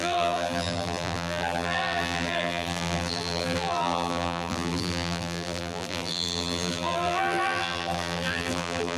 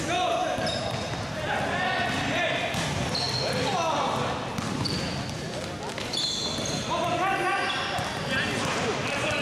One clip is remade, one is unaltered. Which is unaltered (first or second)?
second